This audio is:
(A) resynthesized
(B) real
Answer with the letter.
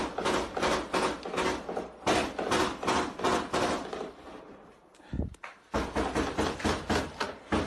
B